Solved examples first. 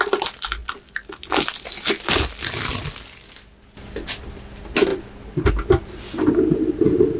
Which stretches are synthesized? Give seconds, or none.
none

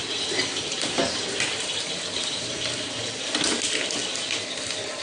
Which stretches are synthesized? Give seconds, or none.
0.0-3.0

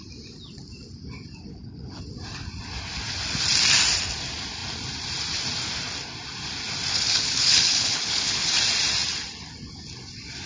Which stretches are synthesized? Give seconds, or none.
1.5-2.0; 6.9-8.5

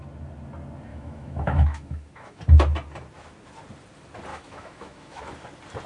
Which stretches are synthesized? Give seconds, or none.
0.9-2.4; 4.3-5.2